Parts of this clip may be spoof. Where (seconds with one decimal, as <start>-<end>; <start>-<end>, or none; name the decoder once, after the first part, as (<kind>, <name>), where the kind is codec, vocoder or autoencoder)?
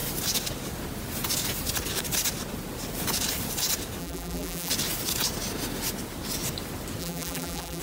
4.0-4.7 (vocoder, BigVGAN v2); 7.0-7.8